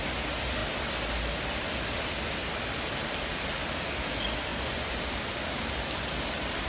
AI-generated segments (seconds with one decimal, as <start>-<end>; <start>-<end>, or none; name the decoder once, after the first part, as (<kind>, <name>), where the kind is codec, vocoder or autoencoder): 4.5-5.0 (vocoder, Vocos)